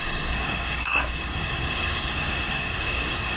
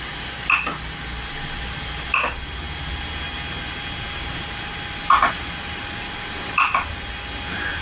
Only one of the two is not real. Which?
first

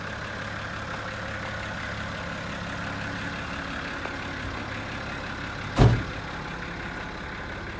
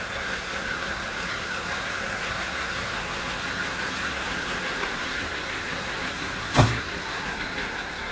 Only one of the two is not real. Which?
second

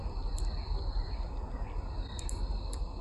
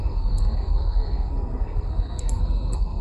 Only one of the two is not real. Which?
second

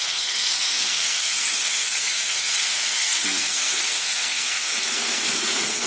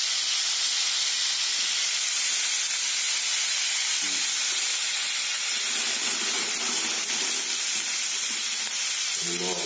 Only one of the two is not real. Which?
first